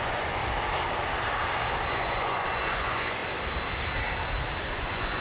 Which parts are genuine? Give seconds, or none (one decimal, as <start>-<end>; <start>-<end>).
0.4-1.9; 3.2-4.7